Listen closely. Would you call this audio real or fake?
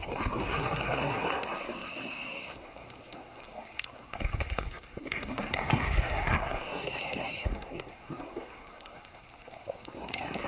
fake